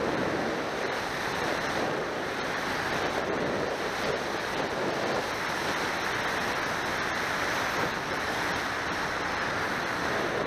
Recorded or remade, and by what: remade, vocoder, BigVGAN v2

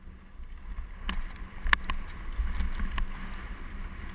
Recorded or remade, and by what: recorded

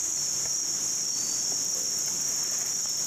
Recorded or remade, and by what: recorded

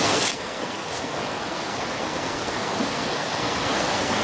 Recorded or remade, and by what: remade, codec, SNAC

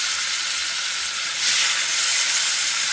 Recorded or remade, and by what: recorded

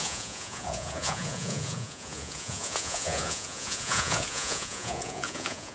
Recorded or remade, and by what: remade, vocoder, Vocos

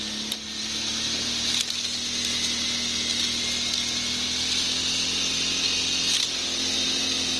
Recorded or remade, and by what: recorded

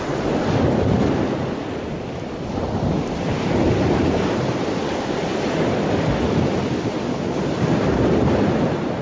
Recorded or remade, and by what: recorded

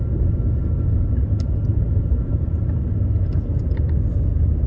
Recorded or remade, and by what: recorded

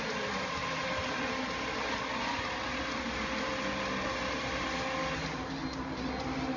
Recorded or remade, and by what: recorded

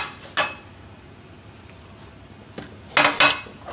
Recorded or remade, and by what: recorded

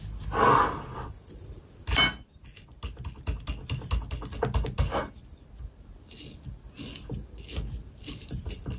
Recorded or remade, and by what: recorded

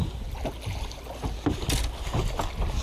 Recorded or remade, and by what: recorded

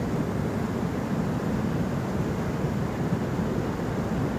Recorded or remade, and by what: recorded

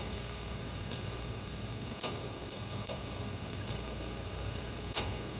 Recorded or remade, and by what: remade, codec, SNAC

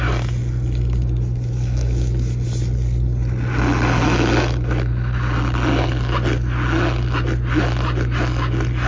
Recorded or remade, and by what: recorded